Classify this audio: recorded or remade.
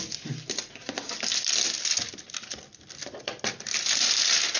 recorded